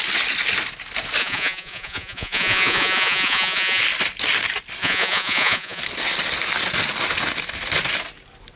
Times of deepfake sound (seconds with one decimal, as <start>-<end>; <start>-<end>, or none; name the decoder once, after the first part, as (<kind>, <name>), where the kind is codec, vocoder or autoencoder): 1.2-3.8 (vocoder, Vocos); 4.8-5.8